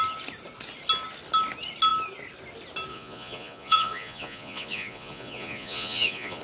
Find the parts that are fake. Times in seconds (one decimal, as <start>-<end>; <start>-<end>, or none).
2.9-6.4